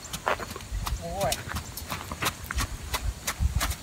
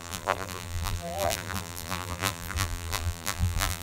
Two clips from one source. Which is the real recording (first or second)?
first